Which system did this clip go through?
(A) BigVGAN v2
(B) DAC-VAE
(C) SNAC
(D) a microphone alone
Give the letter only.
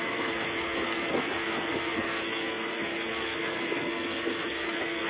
C